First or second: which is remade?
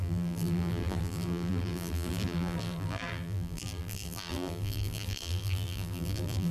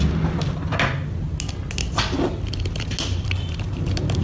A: first